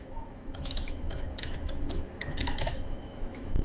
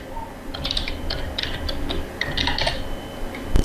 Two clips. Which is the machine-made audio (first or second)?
first